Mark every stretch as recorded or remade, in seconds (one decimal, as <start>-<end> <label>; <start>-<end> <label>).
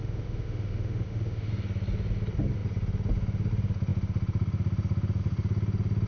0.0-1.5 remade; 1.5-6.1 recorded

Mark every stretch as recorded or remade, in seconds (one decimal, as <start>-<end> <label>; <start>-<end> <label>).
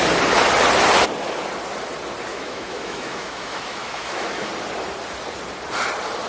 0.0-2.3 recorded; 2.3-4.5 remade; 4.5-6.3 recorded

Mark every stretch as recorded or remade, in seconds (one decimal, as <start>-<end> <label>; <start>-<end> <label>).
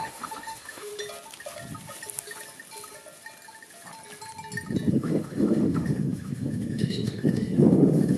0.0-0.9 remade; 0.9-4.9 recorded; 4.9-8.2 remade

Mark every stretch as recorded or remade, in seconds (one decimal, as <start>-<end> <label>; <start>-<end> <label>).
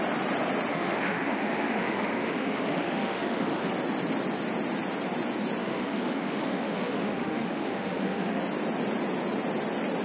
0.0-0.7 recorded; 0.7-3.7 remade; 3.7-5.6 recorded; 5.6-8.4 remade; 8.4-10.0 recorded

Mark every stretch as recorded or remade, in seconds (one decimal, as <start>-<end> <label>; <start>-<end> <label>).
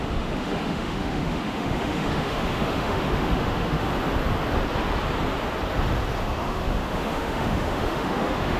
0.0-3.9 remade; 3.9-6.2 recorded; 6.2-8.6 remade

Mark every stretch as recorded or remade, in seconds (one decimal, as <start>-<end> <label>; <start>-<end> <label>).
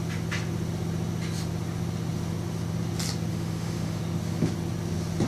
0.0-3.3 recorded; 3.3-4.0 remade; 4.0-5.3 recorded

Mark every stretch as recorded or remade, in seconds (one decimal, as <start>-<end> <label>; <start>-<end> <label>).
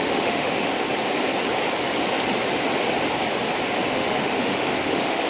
0.0-0.7 remade; 0.7-3.9 recorded; 3.9-5.3 remade